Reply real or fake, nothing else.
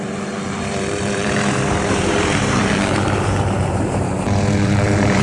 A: fake